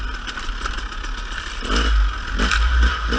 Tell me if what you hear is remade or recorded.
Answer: recorded